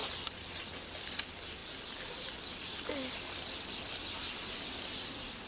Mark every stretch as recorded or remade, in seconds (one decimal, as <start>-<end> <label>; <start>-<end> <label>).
0.0-5.5 recorded

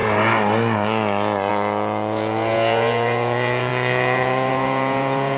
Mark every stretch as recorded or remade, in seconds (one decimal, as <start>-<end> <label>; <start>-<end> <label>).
0.0-1.5 recorded; 1.5-5.4 remade